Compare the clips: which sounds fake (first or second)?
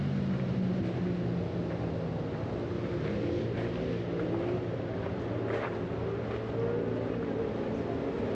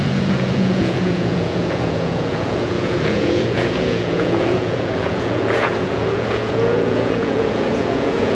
second